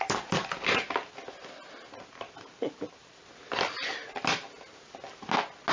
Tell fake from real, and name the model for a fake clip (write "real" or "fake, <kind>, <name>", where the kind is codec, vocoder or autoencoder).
real